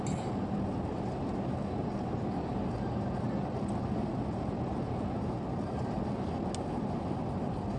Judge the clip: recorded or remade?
recorded